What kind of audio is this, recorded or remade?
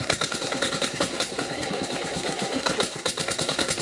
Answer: remade